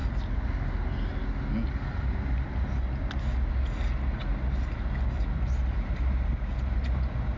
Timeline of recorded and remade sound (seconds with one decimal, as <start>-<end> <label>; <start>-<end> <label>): 0.0-7.4 recorded